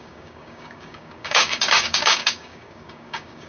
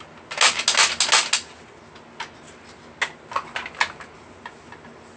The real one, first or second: second